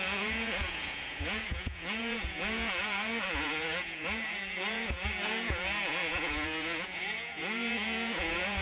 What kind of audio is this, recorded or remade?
remade